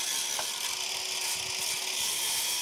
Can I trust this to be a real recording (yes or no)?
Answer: yes